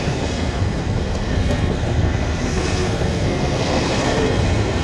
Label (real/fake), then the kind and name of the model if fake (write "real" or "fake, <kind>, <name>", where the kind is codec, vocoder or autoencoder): fake, codec, SNAC